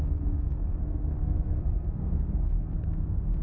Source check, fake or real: fake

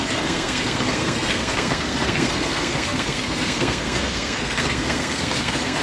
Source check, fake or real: fake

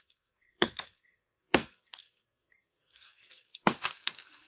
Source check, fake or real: fake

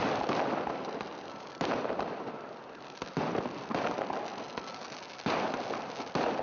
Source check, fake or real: real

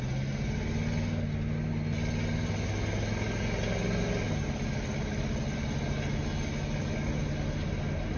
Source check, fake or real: real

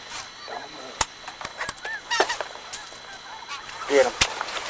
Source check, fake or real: real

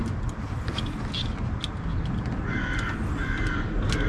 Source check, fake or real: real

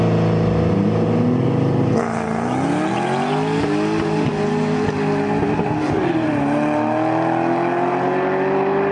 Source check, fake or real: real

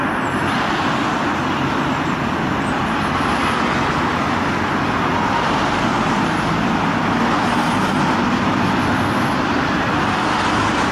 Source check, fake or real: real